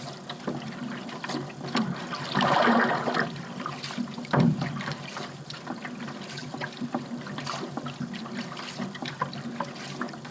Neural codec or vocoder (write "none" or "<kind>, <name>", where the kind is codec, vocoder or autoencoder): none